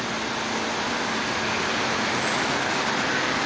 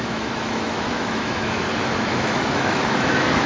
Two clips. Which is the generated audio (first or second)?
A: second